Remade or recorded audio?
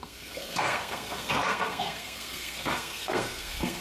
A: remade